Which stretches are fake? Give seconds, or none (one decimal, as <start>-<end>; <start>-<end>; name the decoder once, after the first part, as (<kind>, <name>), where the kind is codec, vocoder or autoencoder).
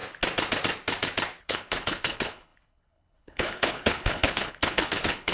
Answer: 1.4-5.3 (codec, HILCodec)